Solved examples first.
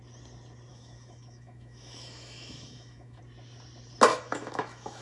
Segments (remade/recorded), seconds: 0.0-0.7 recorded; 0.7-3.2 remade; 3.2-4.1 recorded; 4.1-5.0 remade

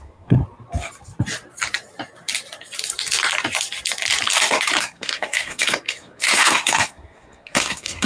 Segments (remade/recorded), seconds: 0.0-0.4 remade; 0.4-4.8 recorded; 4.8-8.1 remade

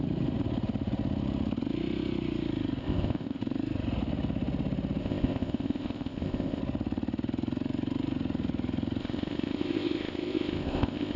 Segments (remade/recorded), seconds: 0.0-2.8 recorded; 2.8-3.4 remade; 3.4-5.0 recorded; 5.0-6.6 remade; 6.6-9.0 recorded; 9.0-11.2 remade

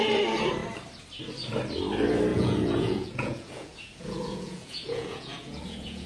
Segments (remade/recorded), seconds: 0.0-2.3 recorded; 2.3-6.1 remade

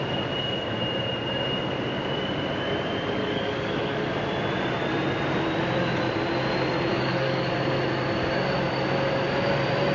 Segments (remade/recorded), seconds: 0.0-3.2 recorded; 3.2-4.1 remade; 4.1-6.9 recorded; 6.9-7.5 remade; 7.5-9.9 recorded